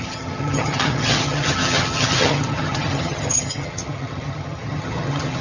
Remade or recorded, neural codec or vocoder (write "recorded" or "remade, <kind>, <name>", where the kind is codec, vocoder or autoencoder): remade, vocoder, HiFi-GAN